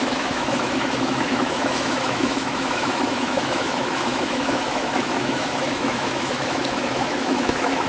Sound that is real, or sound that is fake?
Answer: fake